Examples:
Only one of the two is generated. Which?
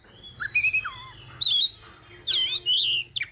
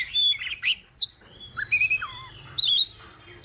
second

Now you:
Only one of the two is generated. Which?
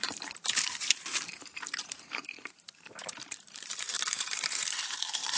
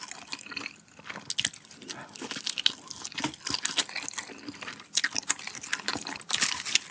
first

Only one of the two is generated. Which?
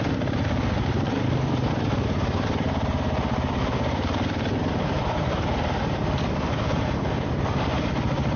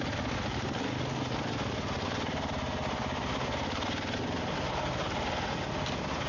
first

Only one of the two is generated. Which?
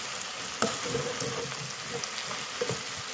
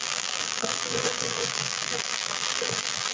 second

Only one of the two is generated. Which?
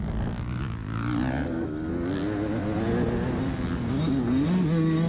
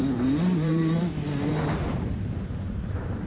second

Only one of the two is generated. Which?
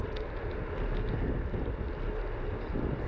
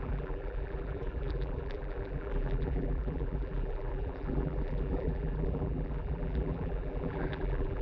second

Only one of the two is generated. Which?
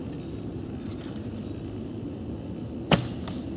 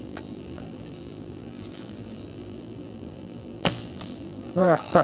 second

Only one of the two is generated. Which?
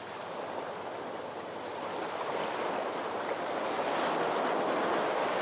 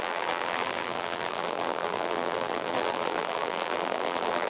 second